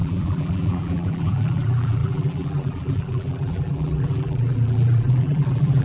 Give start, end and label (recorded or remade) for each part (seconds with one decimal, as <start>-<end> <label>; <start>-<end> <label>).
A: 0.0-5.8 remade